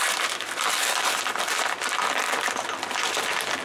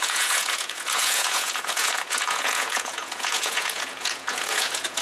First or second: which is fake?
second